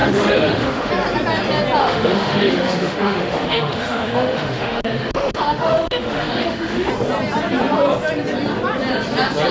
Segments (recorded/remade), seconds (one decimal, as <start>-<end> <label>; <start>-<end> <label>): 0.0-0.9 remade; 0.9-1.8 recorded; 1.8-6.9 remade; 6.9-9.5 recorded